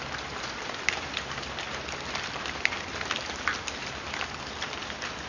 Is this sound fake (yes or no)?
no